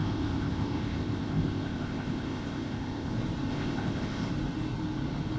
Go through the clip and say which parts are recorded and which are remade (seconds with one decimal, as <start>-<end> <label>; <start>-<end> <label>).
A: 0.0-3.1 remade; 3.1-3.5 recorded; 3.5-4.3 remade; 4.3-5.4 recorded